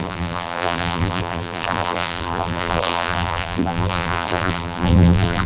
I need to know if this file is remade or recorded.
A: remade